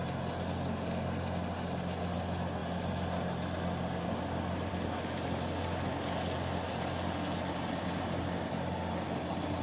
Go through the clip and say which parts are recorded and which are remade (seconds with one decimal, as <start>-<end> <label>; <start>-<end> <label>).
0.0-9.6 recorded